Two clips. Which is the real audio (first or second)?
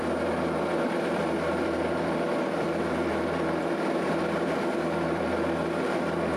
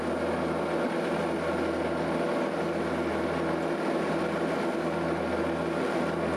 second